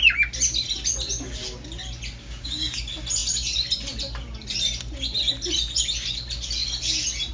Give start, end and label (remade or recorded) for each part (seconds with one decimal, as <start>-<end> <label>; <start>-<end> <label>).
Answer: 0.0-2.2 recorded; 2.2-2.8 remade; 2.8-7.3 recorded